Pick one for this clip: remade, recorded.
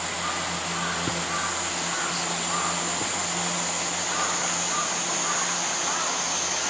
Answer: recorded